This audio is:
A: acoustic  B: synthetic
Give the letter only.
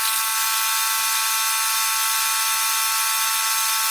A